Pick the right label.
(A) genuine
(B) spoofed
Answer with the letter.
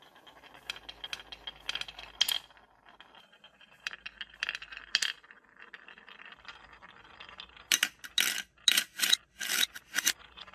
A